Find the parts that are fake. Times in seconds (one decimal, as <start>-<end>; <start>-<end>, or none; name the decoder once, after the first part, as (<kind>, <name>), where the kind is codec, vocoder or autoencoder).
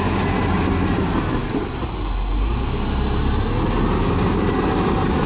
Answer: none